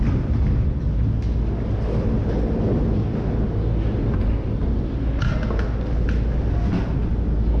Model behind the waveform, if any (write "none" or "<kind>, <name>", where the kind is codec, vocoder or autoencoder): none